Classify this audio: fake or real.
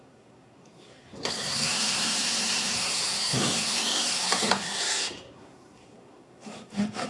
fake